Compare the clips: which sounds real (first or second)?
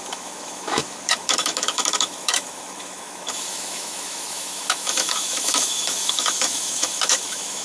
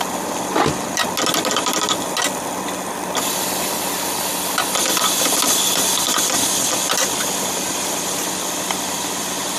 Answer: second